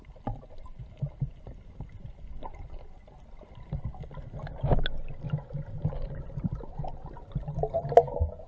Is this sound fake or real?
real